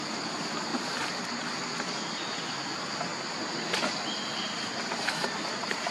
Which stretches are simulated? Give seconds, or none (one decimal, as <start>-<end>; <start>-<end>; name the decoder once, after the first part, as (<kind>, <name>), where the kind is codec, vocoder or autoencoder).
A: 0.7-1.3 (vocoder, BigVGAN v2)